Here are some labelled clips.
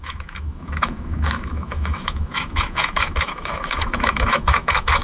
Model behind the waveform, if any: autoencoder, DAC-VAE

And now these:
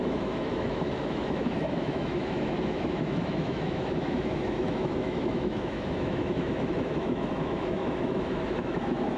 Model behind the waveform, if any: autoencoder, DAC-VAE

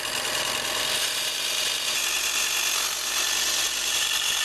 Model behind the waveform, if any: none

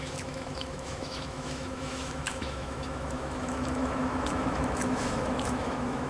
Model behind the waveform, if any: autoencoder, DAC-VAE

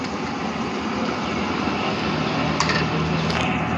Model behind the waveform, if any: none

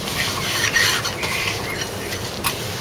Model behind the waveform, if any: none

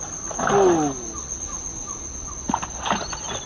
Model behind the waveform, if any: none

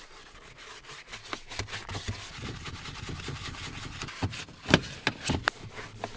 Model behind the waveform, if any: none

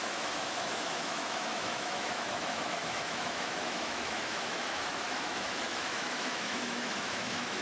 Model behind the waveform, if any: autoencoder, DAC-VAE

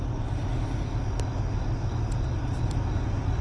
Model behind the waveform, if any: none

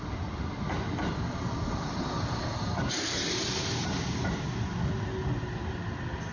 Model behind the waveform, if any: none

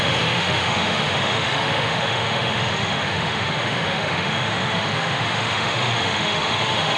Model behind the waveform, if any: autoencoder, DAC-VAE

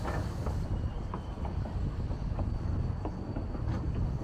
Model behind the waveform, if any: none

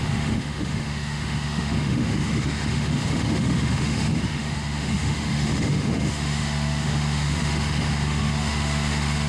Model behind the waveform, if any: autoencoder, DAC-VAE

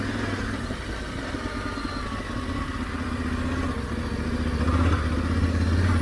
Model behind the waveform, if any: none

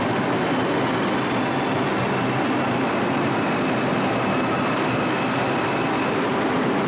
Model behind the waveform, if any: none